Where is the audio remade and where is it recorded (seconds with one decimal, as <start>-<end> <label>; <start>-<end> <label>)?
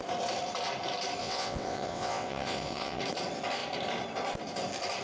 0.0-1.2 recorded; 1.2-3.0 remade; 3.0-5.0 recorded